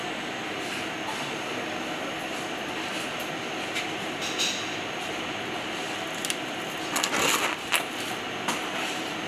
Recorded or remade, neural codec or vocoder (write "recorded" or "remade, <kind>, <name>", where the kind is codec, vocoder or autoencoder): recorded